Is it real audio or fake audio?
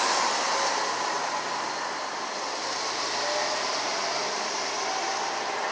real